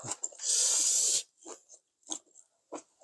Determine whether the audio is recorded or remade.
remade